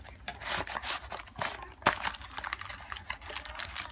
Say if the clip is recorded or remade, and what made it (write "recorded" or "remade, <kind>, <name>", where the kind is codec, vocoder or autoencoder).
recorded